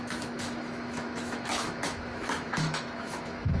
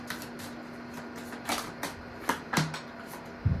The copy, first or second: first